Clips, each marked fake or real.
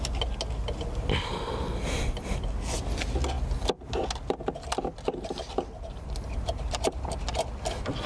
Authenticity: real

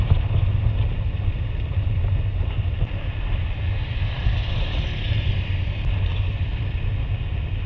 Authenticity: real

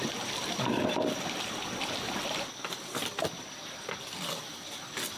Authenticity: real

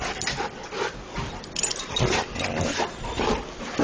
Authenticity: real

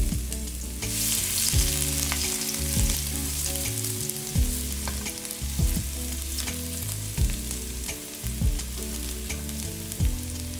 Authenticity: real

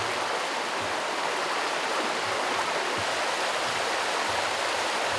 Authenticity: real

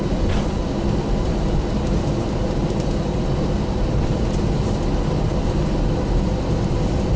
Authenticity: real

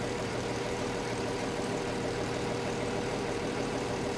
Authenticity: fake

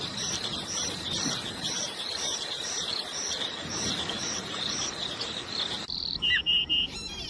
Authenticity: fake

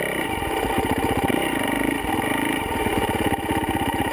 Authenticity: fake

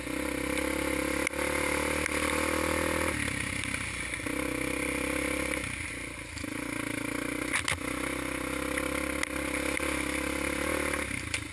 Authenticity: real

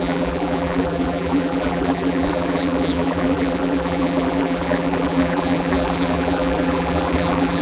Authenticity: fake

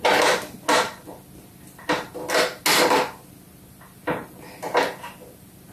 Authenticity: real